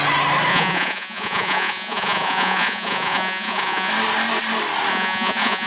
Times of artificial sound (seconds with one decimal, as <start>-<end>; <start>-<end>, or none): 0.5-3.9; 4.9-5.7